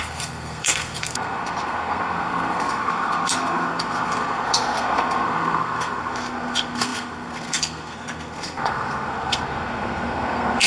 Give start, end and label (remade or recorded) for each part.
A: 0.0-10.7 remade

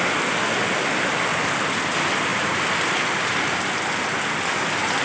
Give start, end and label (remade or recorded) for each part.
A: 0.0-1.3 remade; 1.3-1.9 recorded; 1.9-5.0 remade

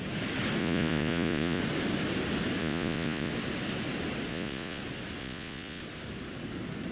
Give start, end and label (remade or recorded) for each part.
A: 0.0-0.6 recorded; 0.6-1.6 remade; 1.6-2.6 recorded; 2.6-3.3 remade; 3.3-4.3 recorded; 4.3-4.8 remade; 4.8-5.2 recorded; 5.2-5.8 remade; 5.8-6.9 recorded

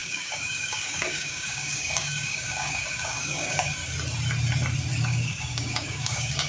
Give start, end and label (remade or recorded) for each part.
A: 0.0-3.8 remade; 3.8-5.0 recorded; 5.0-6.5 remade

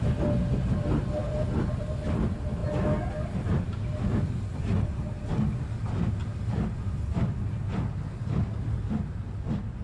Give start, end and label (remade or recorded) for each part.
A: 0.0-9.8 recorded

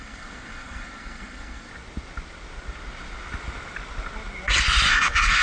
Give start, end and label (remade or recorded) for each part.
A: 0.0-1.7 remade; 1.7-4.9 recorded; 4.9-5.4 remade